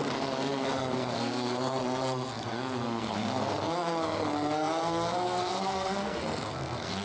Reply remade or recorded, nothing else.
remade